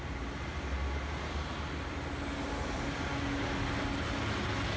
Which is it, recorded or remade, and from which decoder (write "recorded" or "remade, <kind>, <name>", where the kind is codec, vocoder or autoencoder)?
recorded